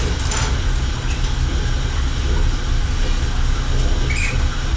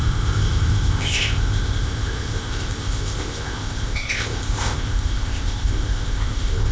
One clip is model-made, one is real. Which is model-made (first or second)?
second